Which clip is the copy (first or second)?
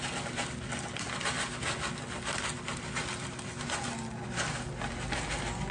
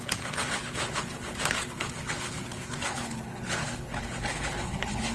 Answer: second